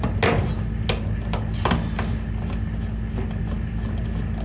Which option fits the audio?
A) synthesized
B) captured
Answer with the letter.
B